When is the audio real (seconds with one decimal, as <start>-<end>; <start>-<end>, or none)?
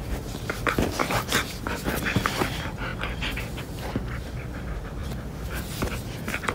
0.0-1.0; 1.6-5.0